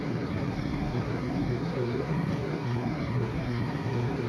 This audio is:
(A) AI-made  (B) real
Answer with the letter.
A